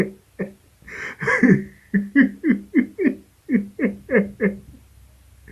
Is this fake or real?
real